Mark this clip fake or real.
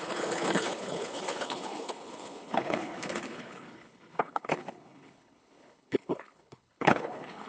fake